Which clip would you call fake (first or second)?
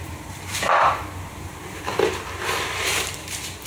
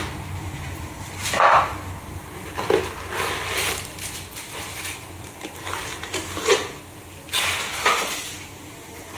first